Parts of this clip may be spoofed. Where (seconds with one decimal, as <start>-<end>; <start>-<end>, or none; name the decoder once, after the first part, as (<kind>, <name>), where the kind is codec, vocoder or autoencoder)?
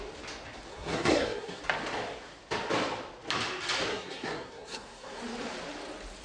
0.7-1.6 (codec, SNAC); 3.9-5.2